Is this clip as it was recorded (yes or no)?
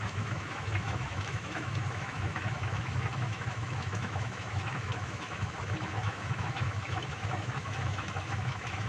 no